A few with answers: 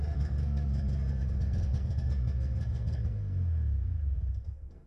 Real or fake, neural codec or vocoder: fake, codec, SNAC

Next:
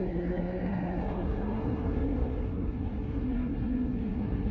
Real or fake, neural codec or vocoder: fake, codec, SNAC